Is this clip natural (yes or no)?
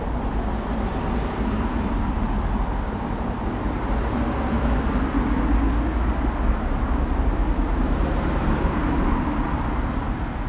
yes